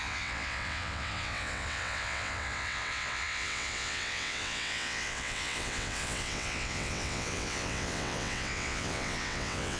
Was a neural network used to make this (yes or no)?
yes